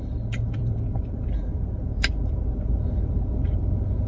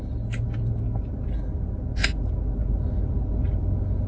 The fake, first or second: first